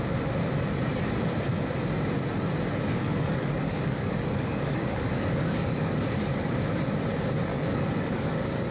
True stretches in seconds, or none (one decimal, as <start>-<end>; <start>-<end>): 0.0-2.8; 6.7-7.5